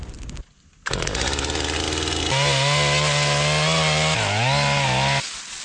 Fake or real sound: real